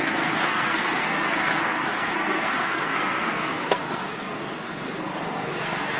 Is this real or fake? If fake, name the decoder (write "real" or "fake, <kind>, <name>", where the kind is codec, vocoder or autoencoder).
fake, codec, SNAC